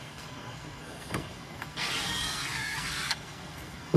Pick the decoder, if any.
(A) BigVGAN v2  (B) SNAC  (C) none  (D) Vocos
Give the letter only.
B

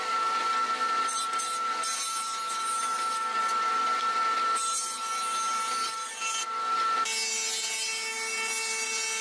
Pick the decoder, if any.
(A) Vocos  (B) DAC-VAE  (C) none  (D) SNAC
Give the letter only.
C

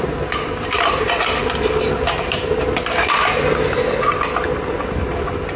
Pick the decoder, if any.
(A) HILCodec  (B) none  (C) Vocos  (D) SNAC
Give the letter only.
B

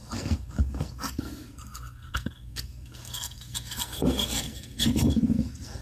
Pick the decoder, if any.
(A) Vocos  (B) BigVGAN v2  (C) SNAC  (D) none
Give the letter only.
C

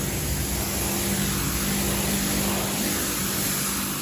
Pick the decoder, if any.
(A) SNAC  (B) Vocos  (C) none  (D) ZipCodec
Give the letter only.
C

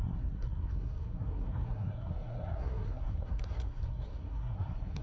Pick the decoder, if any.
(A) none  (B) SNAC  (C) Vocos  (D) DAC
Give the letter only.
B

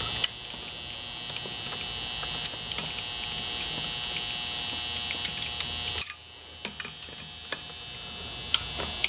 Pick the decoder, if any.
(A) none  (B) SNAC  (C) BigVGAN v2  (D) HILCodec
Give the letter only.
A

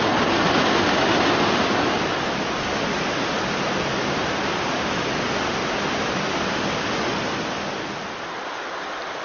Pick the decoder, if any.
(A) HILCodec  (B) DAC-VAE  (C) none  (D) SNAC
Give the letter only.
C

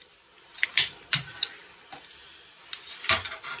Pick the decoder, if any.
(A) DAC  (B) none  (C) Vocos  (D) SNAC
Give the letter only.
B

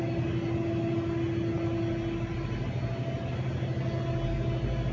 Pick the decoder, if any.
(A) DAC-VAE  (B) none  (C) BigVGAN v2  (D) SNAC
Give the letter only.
B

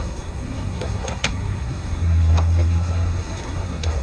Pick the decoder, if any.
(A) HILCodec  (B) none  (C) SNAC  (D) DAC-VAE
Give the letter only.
C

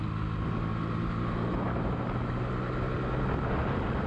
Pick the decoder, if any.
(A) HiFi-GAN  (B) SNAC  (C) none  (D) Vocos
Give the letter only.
C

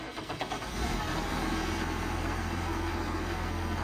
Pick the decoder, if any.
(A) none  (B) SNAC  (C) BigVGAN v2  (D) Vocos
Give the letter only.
B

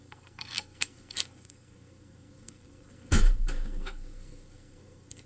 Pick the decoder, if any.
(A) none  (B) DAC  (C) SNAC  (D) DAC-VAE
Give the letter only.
C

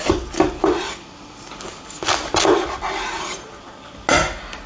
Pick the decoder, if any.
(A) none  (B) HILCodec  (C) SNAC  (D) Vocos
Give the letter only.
A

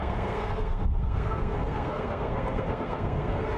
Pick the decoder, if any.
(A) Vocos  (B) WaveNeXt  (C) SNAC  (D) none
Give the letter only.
C